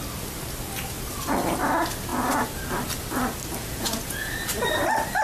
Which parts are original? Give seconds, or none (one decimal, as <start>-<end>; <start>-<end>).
0.0-3.6; 4.3-5.2